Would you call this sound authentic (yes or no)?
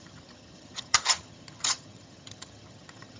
no